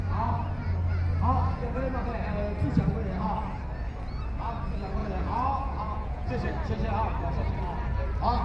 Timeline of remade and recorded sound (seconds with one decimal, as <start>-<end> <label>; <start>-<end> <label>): 0.0-5.0 recorded; 5.0-6.3 remade; 6.3-8.4 recorded